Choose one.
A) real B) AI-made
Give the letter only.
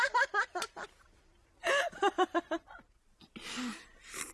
A